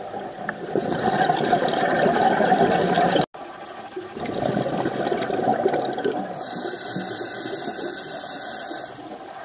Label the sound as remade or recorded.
recorded